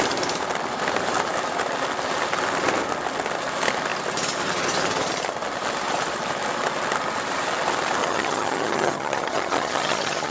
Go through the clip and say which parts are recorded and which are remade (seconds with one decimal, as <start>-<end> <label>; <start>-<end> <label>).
0.0-8.0 recorded; 8.0-10.3 remade

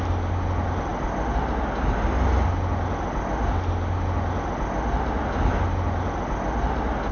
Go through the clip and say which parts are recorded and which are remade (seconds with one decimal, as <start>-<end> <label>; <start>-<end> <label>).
0.0-7.1 recorded

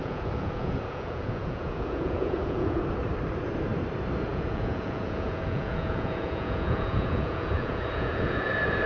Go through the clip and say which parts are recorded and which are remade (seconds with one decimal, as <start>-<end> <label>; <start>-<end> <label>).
0.0-2.8 remade; 2.8-4.3 recorded; 4.3-8.5 remade; 8.5-8.9 recorded

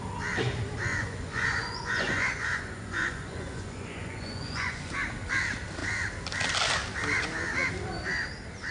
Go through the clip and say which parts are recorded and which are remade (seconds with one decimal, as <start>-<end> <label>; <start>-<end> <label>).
0.0-0.9 recorded; 0.9-4.9 remade; 4.9-8.7 recorded

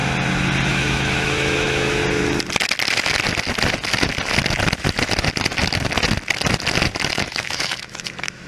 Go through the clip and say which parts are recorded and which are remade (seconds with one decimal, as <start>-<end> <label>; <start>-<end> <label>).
0.0-0.7 recorded; 0.7-2.0 remade; 2.0-7.1 recorded; 7.1-8.5 remade

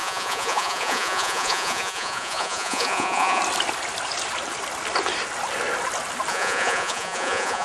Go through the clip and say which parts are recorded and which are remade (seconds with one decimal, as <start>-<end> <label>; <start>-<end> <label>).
0.0-3.4 remade; 3.4-6.3 recorded; 6.3-7.6 remade